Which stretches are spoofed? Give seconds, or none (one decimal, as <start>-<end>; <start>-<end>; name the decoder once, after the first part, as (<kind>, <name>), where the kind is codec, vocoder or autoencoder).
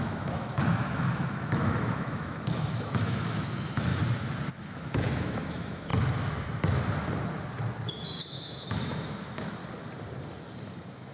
0.0-3.9 (autoencoder, DAC-VAE); 4.6-5.9; 7.9-9.6; 10.6-11.1